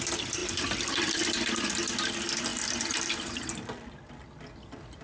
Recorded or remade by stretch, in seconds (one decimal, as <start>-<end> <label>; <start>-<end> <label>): 0.0-5.0 recorded

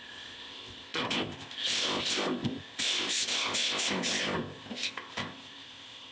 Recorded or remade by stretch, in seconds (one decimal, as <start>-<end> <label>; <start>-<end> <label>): 0.0-6.1 remade

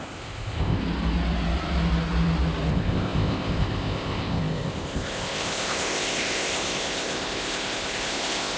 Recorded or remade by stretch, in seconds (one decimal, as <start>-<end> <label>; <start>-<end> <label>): 0.0-0.8 remade; 0.8-2.7 recorded; 2.7-8.6 remade

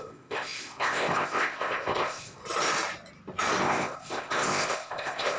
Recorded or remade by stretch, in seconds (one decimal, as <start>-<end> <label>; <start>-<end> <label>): 0.0-2.4 remade; 2.4-3.6 recorded; 3.6-5.4 remade

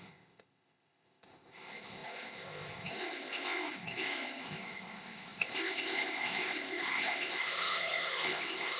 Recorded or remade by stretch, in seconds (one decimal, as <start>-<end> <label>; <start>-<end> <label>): 0.0-8.8 remade